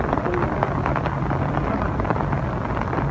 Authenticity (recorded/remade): remade